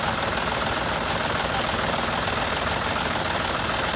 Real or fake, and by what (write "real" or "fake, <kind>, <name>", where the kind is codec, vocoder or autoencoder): real